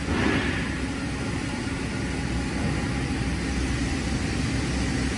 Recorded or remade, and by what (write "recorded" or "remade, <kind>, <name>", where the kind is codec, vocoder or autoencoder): recorded